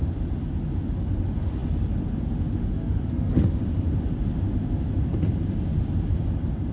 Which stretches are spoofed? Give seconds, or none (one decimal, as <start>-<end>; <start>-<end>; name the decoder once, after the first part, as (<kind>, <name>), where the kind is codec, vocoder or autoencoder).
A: 2.6-3.6 (autoencoder, DAC-VAE)